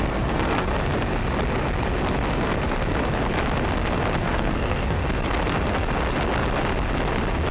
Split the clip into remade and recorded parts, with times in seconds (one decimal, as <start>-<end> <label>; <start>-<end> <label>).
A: 0.0-0.7 remade; 0.7-4.2 recorded; 4.2-5.0 remade; 5.0-7.5 recorded